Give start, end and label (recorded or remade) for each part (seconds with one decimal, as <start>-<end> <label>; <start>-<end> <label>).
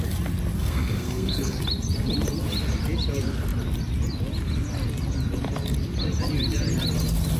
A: 0.0-0.6 recorded; 0.6-1.6 remade; 1.6-7.4 recorded